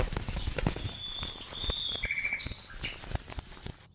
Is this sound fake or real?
real